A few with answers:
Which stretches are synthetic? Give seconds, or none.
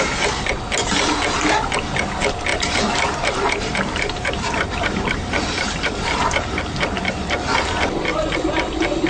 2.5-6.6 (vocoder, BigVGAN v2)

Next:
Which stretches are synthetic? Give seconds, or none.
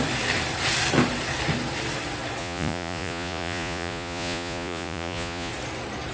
2.4-5.5 (vocoder, Vocos)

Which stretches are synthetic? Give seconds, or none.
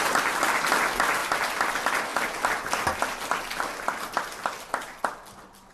none